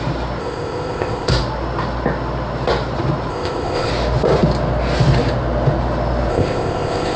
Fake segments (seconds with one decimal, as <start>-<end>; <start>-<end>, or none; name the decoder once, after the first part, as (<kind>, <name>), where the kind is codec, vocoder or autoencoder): 0.4-1.3 (codec, ZipCodec); 3.3-3.9; 6.3-7.2